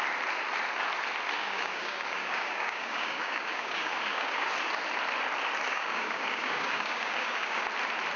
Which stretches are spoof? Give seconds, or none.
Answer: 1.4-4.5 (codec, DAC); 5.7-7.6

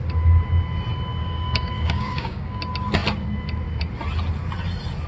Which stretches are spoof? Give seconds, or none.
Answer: 1.2-2.6 (codec, DAC)

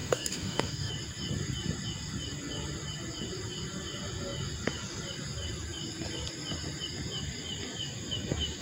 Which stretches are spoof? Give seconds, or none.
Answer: 0.0-0.9 (codec, DAC)